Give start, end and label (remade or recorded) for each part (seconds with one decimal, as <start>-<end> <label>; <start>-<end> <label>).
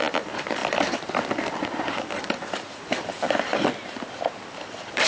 0.0-3.5 remade; 3.5-4.5 recorded; 4.5-5.1 remade